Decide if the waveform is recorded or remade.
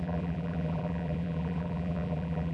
remade